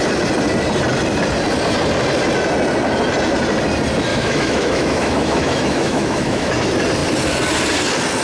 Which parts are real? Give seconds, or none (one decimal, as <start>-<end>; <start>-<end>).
0.0-4.1; 6.5-8.2